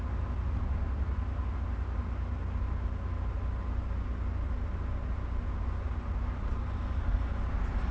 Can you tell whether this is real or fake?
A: real